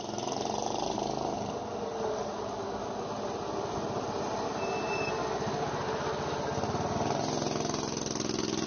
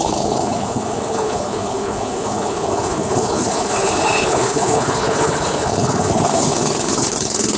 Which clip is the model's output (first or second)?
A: second